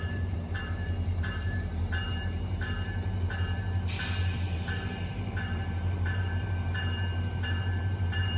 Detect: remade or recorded remade